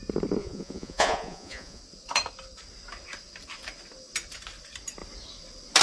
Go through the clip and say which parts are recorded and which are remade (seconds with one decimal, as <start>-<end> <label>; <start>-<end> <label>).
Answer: 0.0-0.4 recorded; 0.4-1.8 remade; 1.8-5.8 recorded